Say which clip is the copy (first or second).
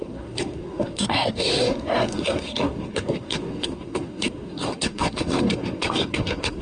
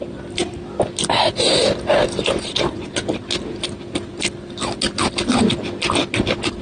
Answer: first